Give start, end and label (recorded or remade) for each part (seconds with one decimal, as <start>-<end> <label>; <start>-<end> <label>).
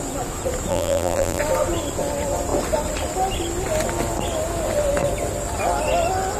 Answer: 0.0-0.7 recorded; 0.7-1.4 remade; 1.4-6.4 recorded